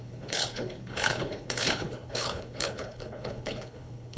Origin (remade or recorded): remade